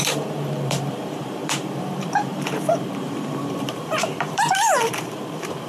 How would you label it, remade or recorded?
remade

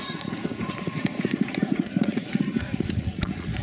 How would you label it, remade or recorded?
remade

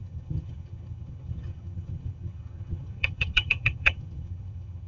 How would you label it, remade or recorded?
remade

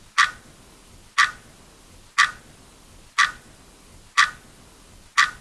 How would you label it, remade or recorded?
recorded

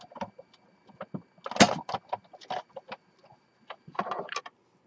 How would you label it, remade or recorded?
recorded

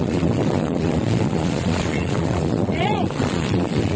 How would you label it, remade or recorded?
remade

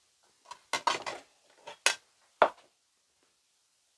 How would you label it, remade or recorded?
recorded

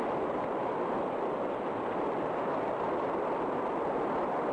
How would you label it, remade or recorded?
recorded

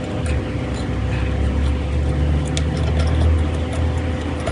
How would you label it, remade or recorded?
recorded